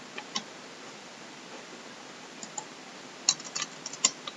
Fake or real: real